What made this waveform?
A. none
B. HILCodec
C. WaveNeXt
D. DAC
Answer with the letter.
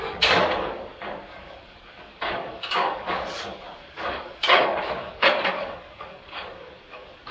D